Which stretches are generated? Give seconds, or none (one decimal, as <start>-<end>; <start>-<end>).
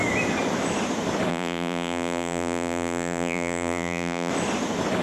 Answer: 1.3-4.3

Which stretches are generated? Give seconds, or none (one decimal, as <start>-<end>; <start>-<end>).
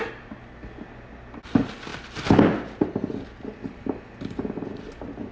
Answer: 1.9-5.3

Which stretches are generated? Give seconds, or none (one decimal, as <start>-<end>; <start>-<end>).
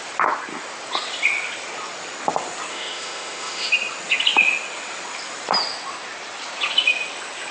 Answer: 2.7-3.7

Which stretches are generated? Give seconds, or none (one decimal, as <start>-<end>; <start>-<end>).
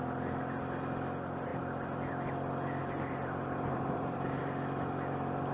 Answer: 2.8-4.4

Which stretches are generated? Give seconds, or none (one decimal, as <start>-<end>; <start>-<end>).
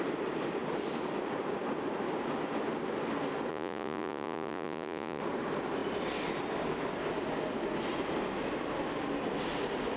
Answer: 3.5-5.2